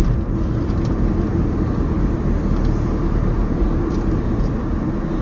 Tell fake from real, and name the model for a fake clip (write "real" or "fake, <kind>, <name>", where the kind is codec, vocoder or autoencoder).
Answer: real